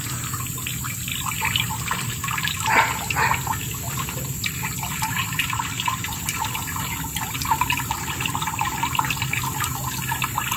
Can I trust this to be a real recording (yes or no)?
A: yes